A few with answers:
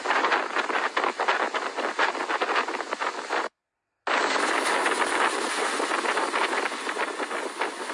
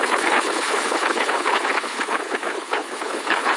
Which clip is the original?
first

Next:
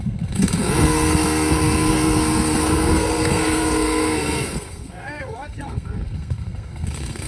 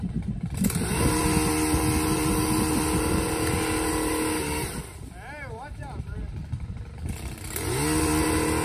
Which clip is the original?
second